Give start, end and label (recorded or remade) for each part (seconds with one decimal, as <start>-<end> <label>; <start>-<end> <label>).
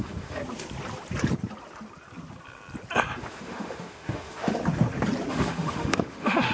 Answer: 0.0-0.4 remade; 0.4-3.2 recorded; 3.2-4.6 remade; 4.6-5.3 recorded; 5.3-6.5 remade